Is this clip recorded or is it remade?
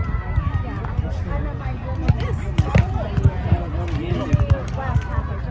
recorded